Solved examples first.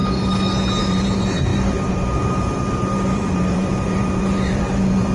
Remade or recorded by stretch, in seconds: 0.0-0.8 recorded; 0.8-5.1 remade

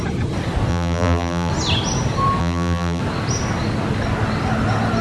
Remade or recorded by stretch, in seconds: 0.0-0.7 recorded; 0.7-1.5 remade; 1.5-2.4 recorded; 2.4-3.0 remade; 3.0-5.0 recorded

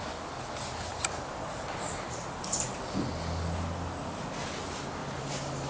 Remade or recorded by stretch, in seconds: 0.0-0.9 recorded; 0.9-2.8 remade; 2.8-5.0 recorded; 5.0-5.7 remade

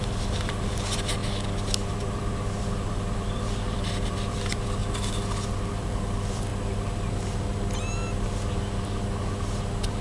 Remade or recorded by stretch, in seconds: 0.0-1.2 remade; 1.2-1.9 recorded; 1.9-4.8 remade; 4.8-5.7 recorded; 5.7-6.5 remade; 6.5-10.0 recorded

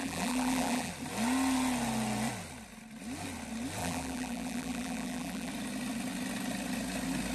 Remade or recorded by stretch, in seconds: 0.0-0.9 remade; 0.9-3.8 recorded; 3.8-5.5 remade; 5.5-7.3 recorded

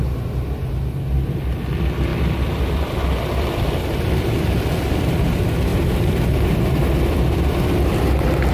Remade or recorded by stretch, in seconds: 0.0-2.1 recorded; 2.1-5.0 remade; 5.0-5.7 recorded; 5.7-8.5 remade

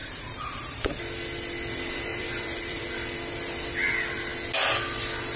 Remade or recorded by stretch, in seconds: 0.0-0.9 remade; 0.9-2.1 recorded; 2.1-2.9 remade; 2.9-5.4 recorded

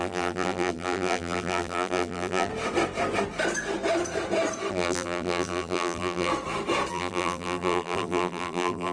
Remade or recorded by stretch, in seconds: 0.0-2.5 remade; 2.5-4.7 recorded; 4.7-6.3 remade; 6.3-6.9 recorded; 6.9-8.9 remade